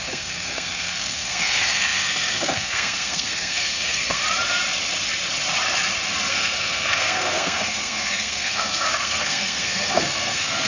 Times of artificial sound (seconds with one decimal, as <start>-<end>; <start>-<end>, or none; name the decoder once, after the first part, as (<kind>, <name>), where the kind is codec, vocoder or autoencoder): 0.0-4.2 (codec, SNAC); 6.3-10.7

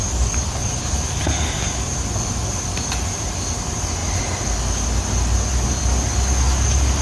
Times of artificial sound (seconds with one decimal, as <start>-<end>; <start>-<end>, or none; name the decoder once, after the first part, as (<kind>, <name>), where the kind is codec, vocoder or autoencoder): 0.6-1.6 (vocoder, BigVGAN v2)

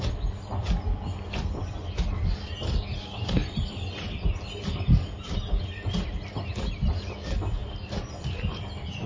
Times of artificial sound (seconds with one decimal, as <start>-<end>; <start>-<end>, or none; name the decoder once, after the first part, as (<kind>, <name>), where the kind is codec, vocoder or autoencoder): 3.4-5.9 (vocoder, BigVGAN v2); 7.6-9.1

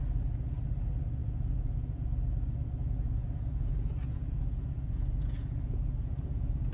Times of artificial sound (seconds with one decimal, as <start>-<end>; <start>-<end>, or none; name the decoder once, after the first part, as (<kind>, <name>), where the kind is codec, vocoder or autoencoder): 1.2-2.1 (vocoder, Vocos); 2.8-6.7

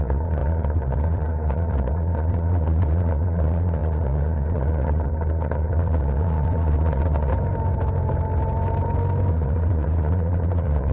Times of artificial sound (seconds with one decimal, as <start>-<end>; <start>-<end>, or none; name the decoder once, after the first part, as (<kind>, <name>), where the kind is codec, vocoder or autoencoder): 0.0-7.3 (vocoder, Vocos); 9.3-10.9

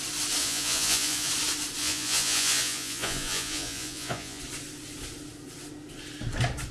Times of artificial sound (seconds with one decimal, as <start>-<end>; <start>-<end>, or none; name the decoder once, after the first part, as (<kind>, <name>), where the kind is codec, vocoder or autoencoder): 0.4-1.3 (vocoder, Vocos); 1.8-4.4